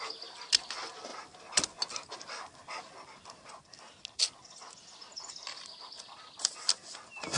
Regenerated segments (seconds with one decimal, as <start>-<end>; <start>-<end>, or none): none